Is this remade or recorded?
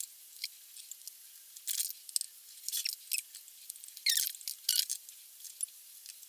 recorded